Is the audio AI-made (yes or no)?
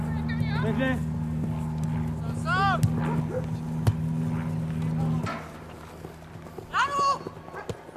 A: no